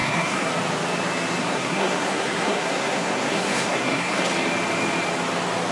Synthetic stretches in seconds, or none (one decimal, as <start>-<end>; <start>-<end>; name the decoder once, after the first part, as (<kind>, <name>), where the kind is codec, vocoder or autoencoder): 0.0-0.5 (codec, SNAC); 1.4-4.3